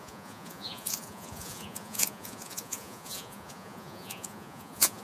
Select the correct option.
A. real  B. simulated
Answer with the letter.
B